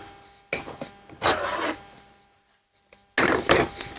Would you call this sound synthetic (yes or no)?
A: no